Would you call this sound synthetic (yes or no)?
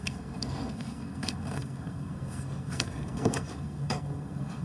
yes